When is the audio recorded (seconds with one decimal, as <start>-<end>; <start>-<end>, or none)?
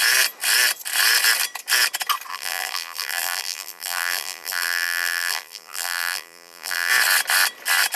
0.0-2.3; 6.9-8.0